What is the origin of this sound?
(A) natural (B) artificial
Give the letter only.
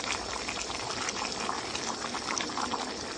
A